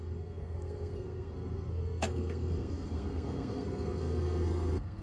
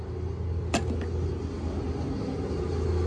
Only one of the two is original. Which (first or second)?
second